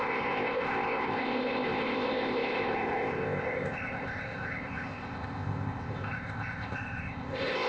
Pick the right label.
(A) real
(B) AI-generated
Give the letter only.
B